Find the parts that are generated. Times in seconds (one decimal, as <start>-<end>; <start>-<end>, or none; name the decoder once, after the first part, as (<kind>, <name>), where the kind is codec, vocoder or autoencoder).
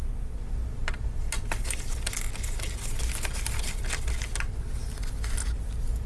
none